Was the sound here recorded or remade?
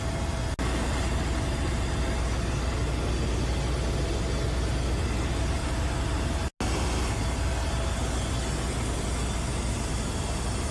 recorded